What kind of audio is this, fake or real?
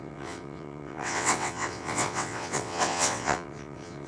fake